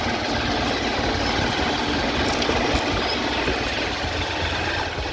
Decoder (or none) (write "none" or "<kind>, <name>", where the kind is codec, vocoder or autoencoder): none